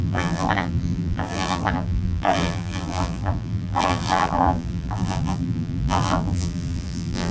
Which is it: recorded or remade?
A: remade